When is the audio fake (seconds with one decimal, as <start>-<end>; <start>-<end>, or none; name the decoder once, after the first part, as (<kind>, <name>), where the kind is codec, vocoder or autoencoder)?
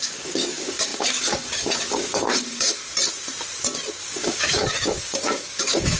0.0-2.8 (codec, DAC); 4.0-6.0